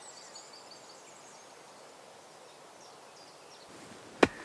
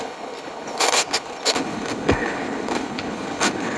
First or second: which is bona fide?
first